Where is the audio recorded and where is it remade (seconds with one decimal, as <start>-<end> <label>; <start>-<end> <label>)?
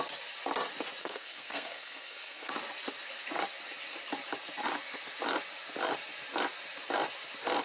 0.0-1.0 recorded; 1.0-2.5 remade; 2.5-7.6 recorded